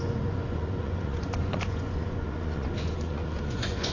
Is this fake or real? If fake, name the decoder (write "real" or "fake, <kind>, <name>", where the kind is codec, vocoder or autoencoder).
fake, vocoder, Vocos